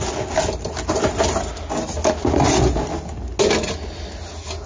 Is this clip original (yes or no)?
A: yes